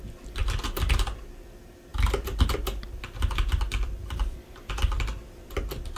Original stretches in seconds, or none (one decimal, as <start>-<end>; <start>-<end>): 0.0-1.9; 4.7-6.0